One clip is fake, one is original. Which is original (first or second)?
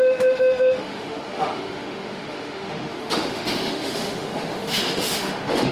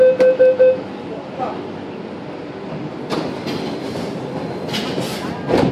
second